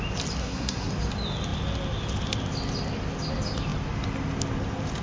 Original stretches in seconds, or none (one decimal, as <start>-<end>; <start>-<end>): 0.0-0.4; 0.9-5.0